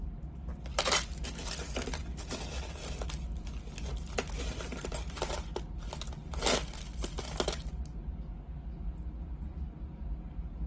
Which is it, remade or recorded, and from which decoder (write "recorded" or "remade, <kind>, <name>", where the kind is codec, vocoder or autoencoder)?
recorded